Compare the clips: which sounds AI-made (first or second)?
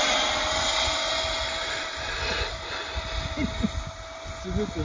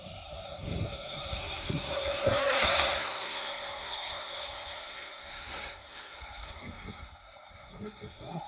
second